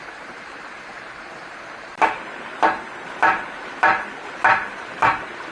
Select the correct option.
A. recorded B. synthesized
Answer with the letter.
A